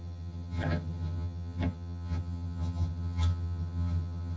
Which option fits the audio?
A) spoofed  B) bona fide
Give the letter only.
A